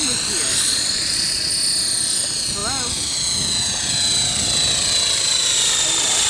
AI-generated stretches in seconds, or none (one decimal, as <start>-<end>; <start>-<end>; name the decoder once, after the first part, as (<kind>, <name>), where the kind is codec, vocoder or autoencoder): 0.5-1.5 (vocoder, Vocos)